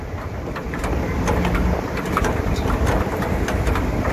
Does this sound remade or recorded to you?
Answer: recorded